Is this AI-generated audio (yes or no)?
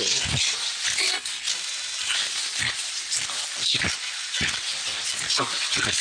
no